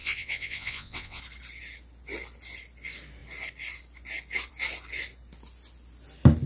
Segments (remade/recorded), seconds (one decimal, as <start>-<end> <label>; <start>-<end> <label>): 0.0-1.2 remade; 1.2-6.5 recorded